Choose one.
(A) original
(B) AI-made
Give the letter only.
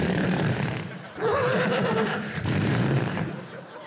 B